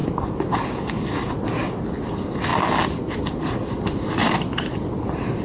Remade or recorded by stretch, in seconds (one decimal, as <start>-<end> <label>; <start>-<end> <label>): 0.0-2.5 recorded; 2.5-4.7 remade; 4.7-5.4 recorded